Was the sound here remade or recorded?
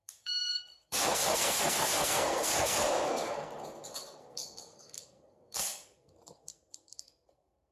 remade